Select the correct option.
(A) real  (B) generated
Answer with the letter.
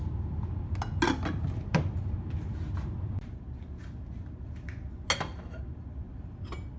A